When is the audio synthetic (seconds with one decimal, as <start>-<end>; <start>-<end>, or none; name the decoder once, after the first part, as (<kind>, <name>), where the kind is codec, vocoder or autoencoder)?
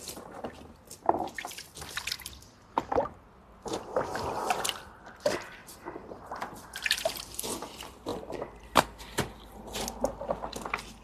5.6-6.3 (vocoder, BigVGAN v2); 8.1-9.8